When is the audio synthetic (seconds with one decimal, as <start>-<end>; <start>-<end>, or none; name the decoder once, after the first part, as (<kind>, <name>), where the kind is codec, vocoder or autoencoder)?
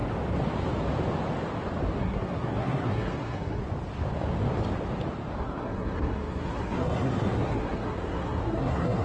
2.0-3.6 (codec, SNAC); 5.4-9.0